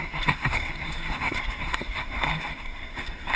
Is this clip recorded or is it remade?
remade